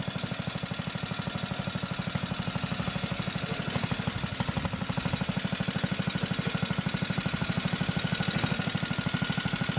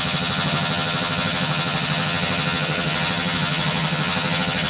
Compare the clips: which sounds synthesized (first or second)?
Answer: second